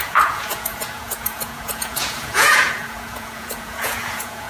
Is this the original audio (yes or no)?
no